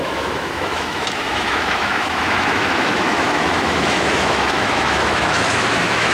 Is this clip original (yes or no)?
no